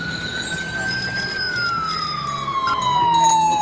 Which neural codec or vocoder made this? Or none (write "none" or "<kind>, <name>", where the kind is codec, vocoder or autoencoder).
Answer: none